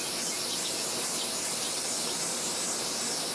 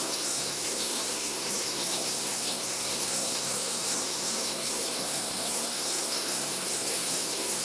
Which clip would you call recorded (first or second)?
first